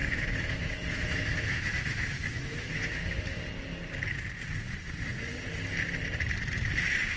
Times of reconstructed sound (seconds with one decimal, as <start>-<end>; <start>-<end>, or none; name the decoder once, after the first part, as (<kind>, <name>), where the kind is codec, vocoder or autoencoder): 0.0-3.4 (autoencoder, DAC-VAE)